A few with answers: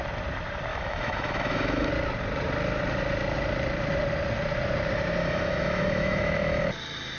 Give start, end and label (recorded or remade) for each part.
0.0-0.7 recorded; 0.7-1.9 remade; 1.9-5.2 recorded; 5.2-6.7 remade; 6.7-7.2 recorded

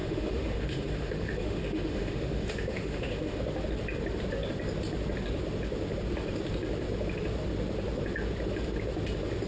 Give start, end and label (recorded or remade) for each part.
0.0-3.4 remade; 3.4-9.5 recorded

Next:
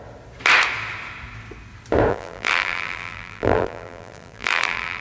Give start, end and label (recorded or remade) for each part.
0.0-2.1 recorded; 2.1-5.0 remade